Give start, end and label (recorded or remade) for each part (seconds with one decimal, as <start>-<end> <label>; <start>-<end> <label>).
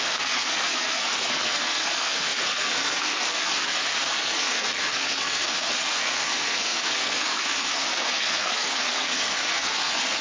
0.0-10.2 remade